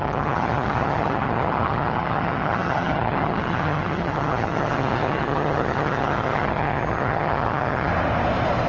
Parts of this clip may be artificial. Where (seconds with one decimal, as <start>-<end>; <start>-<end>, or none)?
0.0-7.9